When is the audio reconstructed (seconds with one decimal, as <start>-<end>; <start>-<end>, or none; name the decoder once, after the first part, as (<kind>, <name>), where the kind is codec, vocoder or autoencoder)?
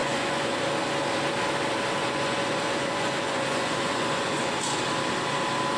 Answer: 0.0-0.6 (vocoder, Vocos); 2.0-4.8